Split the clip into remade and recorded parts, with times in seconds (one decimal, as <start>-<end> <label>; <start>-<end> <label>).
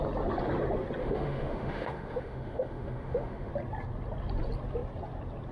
0.0-1.0 recorded; 1.0-3.5 remade; 3.5-5.5 recorded